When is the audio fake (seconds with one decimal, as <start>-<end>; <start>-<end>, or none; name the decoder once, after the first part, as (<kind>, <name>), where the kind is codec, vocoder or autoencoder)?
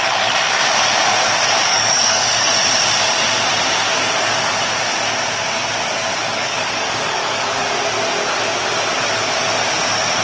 1.7-2.5 (codec, DAC); 6.2-7.6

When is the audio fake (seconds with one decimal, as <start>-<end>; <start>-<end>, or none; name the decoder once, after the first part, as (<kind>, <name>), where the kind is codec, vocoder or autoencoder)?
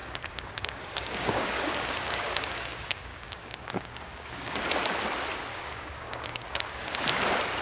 0.0-4.6 (codec, DAC); 5.5-6.9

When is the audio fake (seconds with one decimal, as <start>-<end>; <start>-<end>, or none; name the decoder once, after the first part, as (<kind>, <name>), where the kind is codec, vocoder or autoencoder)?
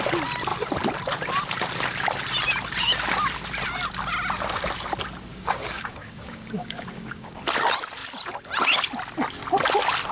5.3-7.4 (codec, DAC)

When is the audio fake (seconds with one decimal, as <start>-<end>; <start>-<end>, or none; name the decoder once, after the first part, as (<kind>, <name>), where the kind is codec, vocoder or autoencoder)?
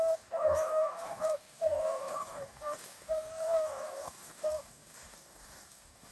0.0-6.1 (codec, DAC)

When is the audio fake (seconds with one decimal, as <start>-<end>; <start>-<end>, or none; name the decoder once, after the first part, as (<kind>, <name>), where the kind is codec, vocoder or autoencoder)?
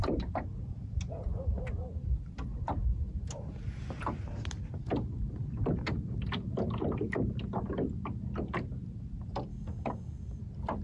9.5-10.4 (codec, DAC)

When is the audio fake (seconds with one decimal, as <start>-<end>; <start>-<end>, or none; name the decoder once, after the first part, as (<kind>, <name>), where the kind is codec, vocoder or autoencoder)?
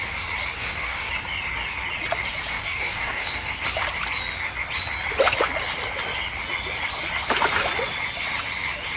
0.6-1.1 (codec, DAC); 2.5-3.5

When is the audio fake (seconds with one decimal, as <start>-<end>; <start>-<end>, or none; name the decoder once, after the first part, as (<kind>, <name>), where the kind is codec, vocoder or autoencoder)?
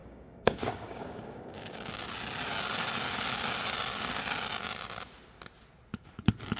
0.0-2.0 (codec, DAC)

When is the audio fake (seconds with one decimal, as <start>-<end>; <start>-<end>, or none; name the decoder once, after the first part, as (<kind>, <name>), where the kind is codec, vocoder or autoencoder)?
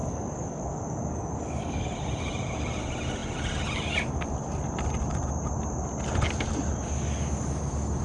0.0-1.9 (codec, DAC)